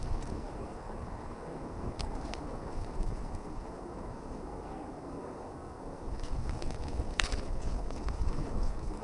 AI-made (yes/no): yes